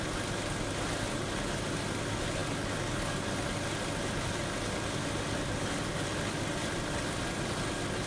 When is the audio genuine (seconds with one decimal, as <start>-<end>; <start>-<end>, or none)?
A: 0.0-8.1